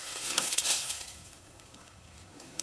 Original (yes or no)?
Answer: no